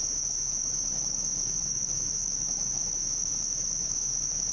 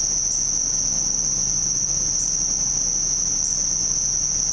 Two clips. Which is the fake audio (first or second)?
first